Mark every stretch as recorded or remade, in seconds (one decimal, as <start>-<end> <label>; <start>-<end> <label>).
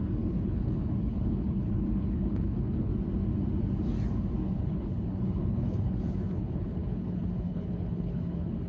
0.0-2.9 remade; 2.9-4.6 recorded; 4.6-8.7 remade